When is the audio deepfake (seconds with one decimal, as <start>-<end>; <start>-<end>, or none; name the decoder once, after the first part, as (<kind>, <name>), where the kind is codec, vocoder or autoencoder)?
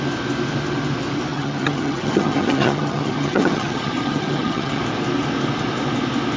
1.3-4.8 (vocoder, HiFi-GAN)